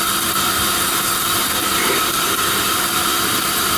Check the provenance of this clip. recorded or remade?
recorded